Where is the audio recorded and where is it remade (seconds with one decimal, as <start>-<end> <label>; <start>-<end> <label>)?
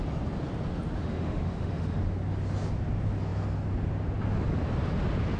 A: 0.0-1.0 recorded; 1.0-2.0 remade; 2.0-5.4 recorded